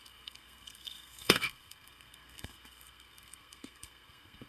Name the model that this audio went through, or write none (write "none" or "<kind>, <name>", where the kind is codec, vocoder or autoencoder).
codec, SNAC